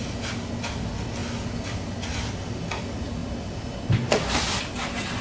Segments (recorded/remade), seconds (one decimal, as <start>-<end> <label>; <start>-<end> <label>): 0.0-3.2 recorded; 3.2-4.6 remade; 4.6-5.2 recorded

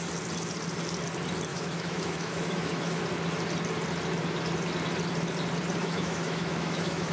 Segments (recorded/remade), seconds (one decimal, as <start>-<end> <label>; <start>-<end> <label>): 0.0-1.5 recorded; 1.5-3.0 remade; 3.0-5.8 recorded; 5.8-7.1 remade

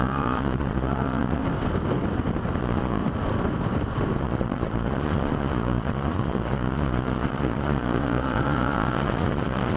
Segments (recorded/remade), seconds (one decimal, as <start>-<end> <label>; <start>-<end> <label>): 0.0-1.4 remade; 1.4-2.6 recorded; 2.6-3.0 remade; 3.0-4.2 recorded; 4.2-9.8 remade

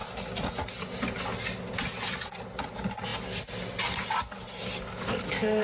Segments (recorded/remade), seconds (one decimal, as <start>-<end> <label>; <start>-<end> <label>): 0.0-5.6 recorded

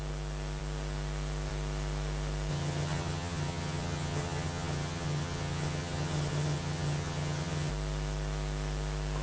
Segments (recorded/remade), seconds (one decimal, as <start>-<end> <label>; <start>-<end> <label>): 0.0-2.5 recorded; 2.5-7.7 remade; 7.7-9.2 recorded

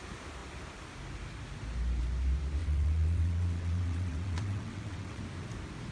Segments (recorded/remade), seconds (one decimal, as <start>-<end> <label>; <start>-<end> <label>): 0.0-2.6 recorded; 2.6-5.2 remade; 5.2-5.9 recorded